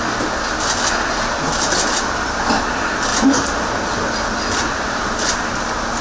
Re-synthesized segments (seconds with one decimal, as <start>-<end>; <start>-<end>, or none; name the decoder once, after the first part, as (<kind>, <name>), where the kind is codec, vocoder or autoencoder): none